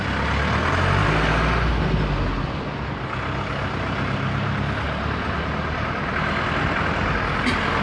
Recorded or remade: recorded